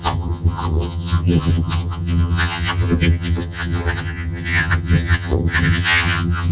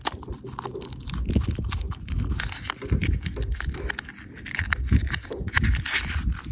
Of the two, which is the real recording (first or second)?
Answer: second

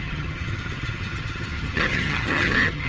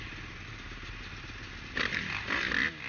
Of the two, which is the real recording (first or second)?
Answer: second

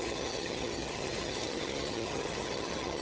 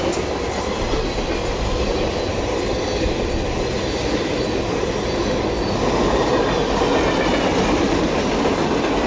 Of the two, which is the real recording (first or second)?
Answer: second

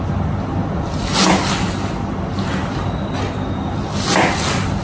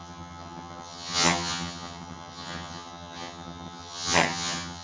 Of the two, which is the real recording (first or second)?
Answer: first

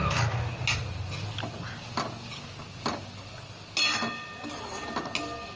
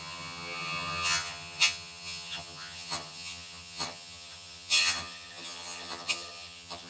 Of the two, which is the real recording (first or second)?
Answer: first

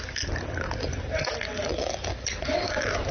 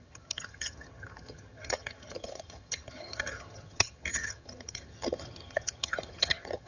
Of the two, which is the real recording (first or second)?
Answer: first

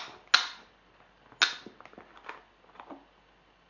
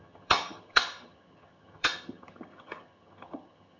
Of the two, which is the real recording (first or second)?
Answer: first